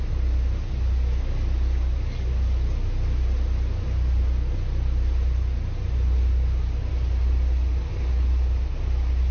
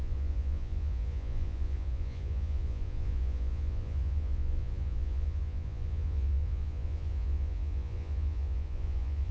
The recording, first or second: first